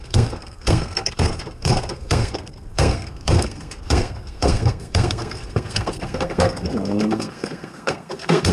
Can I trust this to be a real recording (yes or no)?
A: no